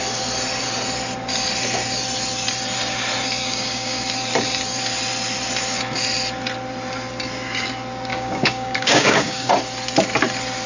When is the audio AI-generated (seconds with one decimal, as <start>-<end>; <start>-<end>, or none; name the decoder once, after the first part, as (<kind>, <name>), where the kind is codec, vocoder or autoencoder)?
3.4-4.0 (codec, DAC); 8.1-9.5